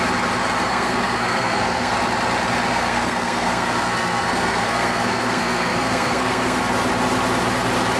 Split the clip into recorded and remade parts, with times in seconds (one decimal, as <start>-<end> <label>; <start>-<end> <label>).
0.0-0.7 recorded; 0.7-1.9 remade; 1.9-2.7 recorded; 2.7-6.6 remade; 6.6-8.0 recorded